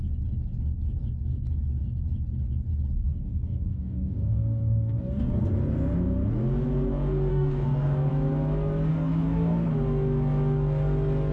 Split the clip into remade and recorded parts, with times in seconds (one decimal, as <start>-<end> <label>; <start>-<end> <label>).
0.0-3.2 recorded; 3.2-5.4 remade; 5.4-7.3 recorded; 7.3-8.1 remade; 8.1-8.9 recorded; 8.9-9.7 remade; 9.7-11.3 recorded